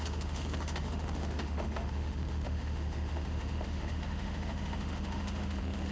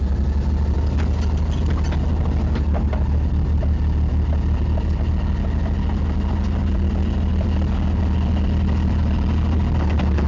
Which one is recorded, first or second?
second